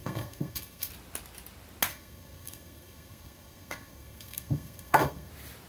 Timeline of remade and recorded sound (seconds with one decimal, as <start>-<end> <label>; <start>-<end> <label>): 0.0-0.9 remade; 0.9-1.9 recorded; 1.9-5.3 remade; 5.3-5.7 recorded